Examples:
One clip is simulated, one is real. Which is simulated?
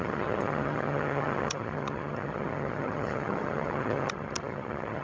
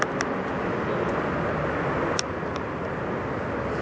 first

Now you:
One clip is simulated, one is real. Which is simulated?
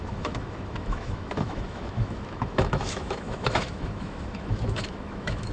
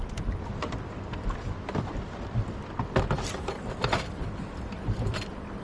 first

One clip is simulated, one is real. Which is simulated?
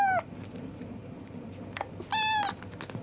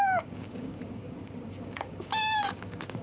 second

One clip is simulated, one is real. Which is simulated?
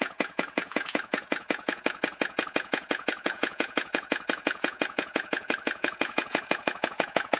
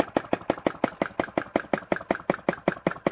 first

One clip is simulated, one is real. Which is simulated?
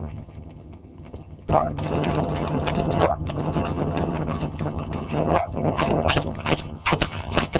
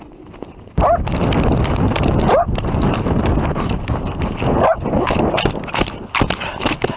first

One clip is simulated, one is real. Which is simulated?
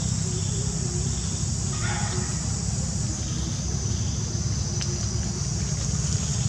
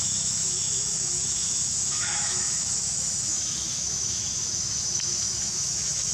second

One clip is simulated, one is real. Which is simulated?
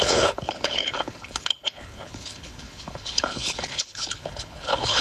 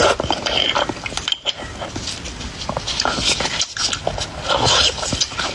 first